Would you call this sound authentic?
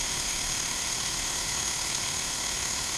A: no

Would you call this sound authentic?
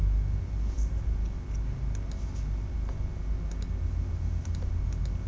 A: yes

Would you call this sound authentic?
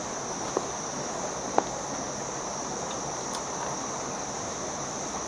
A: yes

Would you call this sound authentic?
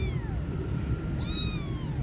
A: no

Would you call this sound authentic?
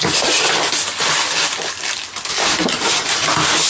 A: yes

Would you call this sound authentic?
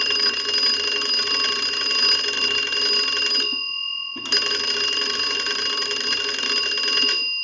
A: yes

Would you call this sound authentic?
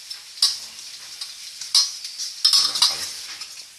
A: yes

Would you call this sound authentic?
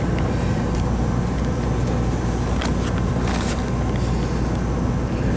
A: yes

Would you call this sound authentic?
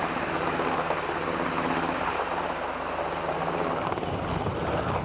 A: yes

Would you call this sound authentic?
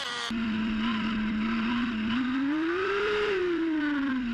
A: no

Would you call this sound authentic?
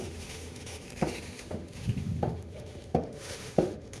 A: no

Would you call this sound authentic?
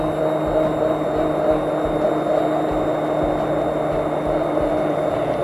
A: yes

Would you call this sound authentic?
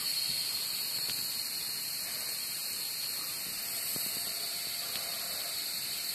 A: yes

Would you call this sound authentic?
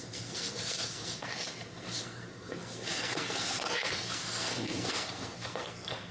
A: no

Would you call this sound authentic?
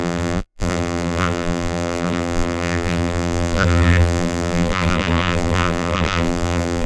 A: no